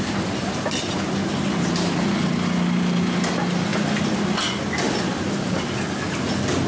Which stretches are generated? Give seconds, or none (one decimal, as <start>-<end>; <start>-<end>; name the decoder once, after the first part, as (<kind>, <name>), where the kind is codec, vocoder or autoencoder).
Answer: none